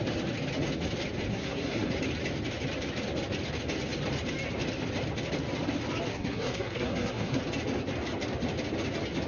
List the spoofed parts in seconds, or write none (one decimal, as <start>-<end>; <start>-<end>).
1.3-1.9; 6.1-7.4